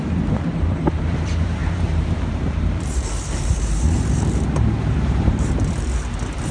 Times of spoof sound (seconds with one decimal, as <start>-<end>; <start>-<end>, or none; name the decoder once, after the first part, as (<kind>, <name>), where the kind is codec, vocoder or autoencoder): 0.0-6.5 (vocoder, BigVGAN v2)